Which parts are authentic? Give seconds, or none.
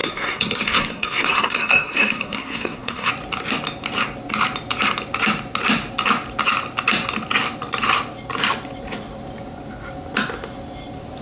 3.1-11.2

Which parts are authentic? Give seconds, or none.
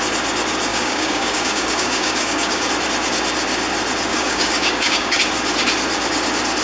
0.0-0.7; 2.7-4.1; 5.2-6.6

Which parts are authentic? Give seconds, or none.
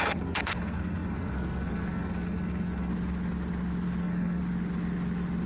2.9-4.0; 4.4-5.5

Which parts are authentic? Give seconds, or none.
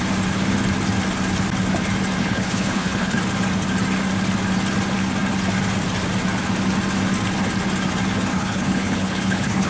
0.0-2.2; 3.2-8.3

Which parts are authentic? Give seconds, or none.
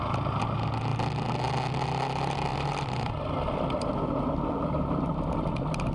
0.0-2.5; 5.0-5.9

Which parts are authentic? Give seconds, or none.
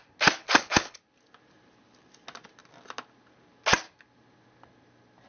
0.0-0.4; 1.0-5.3